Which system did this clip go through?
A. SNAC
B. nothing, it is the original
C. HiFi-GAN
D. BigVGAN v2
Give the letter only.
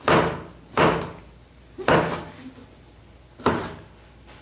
B